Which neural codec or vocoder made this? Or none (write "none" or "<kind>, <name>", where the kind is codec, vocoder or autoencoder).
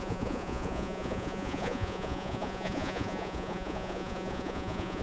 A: vocoder, Vocos